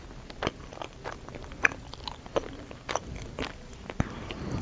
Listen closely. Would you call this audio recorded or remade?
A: remade